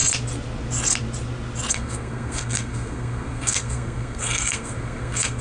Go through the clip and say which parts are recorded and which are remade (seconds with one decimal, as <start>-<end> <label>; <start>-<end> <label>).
0.0-1.7 recorded; 1.7-5.4 remade